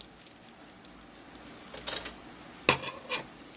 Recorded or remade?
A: recorded